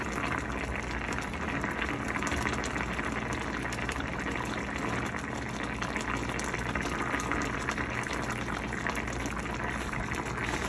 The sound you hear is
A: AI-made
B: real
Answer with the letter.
B